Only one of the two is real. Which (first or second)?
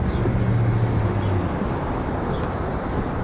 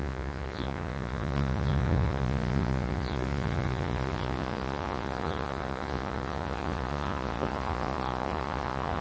first